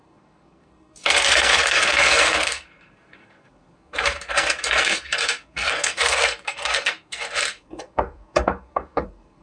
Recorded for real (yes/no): no